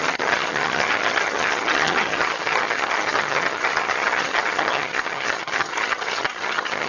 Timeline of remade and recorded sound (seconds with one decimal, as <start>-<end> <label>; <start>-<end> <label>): 0.0-6.9 remade